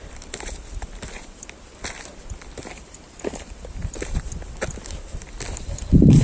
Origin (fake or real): fake